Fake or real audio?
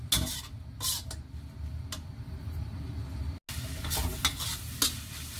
real